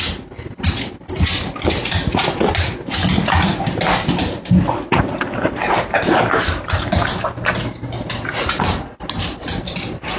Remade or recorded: recorded